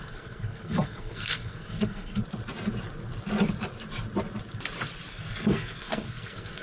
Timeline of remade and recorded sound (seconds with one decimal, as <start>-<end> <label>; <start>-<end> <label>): 0.0-2.2 remade; 2.2-5.1 recorded; 5.1-6.6 remade